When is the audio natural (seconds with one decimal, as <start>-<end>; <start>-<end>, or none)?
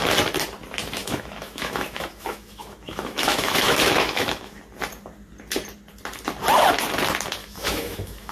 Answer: 0.0-1.0; 4.6-7.4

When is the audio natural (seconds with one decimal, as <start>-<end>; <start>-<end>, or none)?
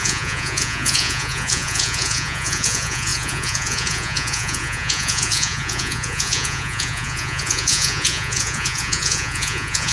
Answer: none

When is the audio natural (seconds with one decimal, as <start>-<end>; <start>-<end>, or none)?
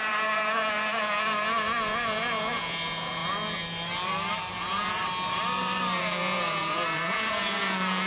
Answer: 3.2-4.6; 5.0-6.0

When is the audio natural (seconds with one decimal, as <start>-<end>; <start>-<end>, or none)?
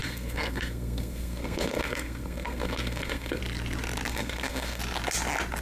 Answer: 3.4-4.1; 4.8-5.6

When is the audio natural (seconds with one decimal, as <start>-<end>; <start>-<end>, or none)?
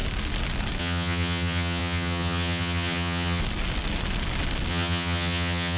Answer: 0.0-0.8; 3.4-4.7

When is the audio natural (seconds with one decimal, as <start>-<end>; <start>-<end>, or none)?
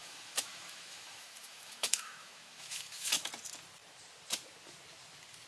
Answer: 3.3-5.5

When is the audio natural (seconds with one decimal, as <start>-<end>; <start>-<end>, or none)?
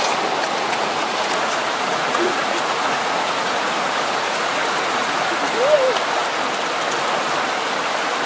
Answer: 0.0-0.4; 5.4-8.3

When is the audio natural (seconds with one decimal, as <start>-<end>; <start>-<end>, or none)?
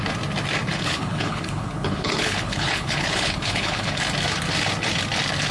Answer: 0.0-0.7; 4.0-5.5